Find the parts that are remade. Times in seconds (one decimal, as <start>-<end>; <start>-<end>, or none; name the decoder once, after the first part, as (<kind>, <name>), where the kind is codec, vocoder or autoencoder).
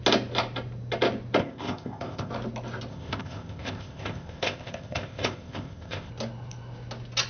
1.4-2.3 (codec, ZipCodec); 2.9-6.1